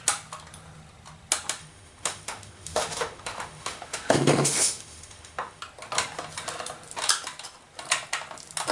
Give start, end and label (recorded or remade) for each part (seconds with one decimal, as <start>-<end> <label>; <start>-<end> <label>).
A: 0.0-1.6 recorded; 1.6-5.6 remade; 5.6-8.7 recorded